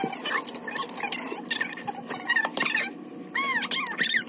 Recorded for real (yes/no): yes